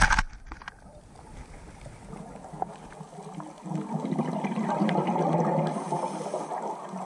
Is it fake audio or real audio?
real